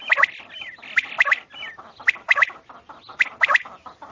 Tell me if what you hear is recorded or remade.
remade